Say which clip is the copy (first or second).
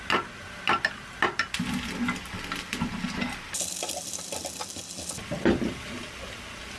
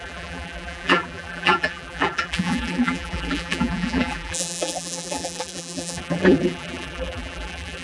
second